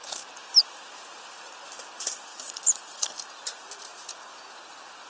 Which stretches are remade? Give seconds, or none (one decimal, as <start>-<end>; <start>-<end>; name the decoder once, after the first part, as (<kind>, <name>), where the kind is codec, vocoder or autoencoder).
2.3-3.1 (vocoder, Vocos)